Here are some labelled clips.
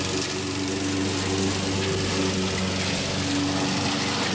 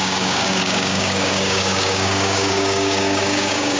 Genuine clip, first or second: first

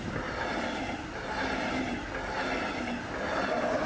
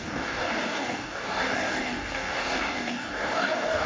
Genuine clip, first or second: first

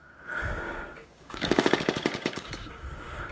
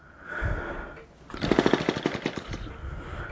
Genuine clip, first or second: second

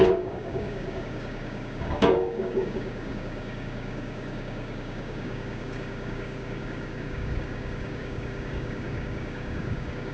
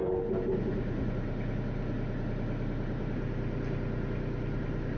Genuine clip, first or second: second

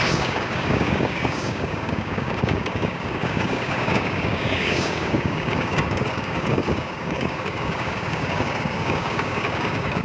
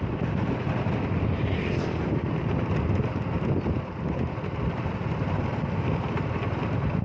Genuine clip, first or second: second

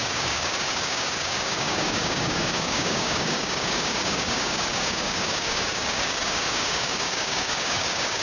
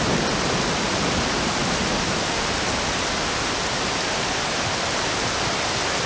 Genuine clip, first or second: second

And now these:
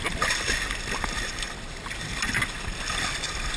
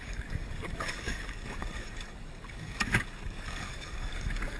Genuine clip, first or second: first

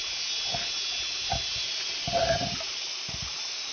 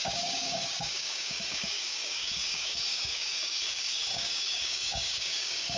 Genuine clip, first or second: first